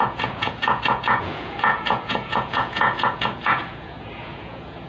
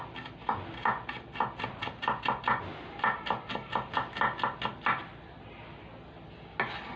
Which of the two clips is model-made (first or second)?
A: first